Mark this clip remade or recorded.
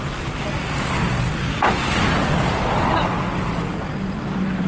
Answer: recorded